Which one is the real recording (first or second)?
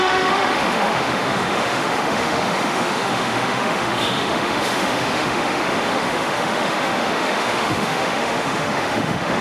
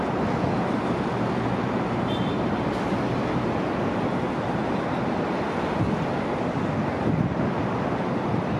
second